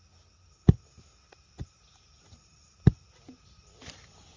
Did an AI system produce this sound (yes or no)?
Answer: no